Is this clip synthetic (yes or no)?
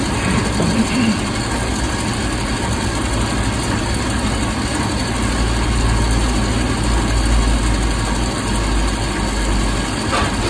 no